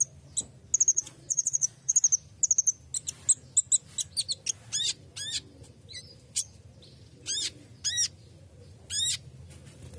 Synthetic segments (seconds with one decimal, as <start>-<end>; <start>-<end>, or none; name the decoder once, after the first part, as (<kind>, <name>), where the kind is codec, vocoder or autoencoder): 0.9-1.9 (vocoder, Vocos)